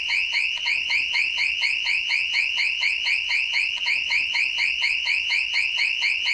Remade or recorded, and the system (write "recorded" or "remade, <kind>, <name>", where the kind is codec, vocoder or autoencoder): remade, vocoder, WaveNeXt